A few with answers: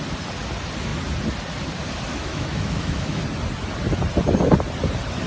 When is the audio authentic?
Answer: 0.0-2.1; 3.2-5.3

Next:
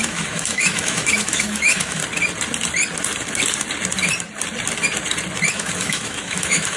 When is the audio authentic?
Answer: 2.0-5.5

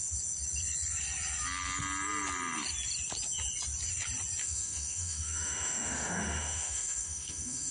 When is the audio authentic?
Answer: 0.0-4.4

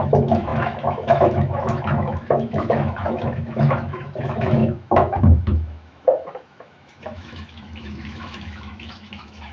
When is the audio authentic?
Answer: none

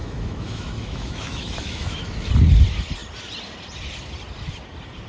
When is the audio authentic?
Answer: 2.3-5.1